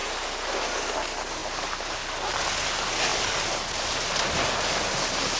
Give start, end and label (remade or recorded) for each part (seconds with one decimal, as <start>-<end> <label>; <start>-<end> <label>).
0.0-5.4 recorded